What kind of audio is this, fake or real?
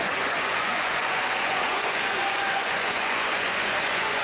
fake